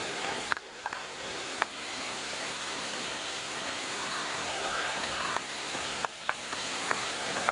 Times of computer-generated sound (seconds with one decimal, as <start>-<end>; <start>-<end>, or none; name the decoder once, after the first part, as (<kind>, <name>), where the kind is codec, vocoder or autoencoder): 0.0-7.5 (codec, SNAC)